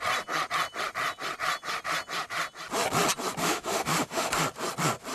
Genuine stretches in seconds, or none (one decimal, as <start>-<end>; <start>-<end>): 0.0-3.4; 4.3-5.1